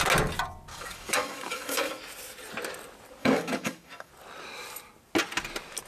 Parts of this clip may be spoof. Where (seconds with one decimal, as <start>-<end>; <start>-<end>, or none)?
0.7-2.0; 3.2-4.1